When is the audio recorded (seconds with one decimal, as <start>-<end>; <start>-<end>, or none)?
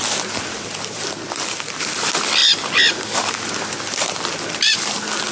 none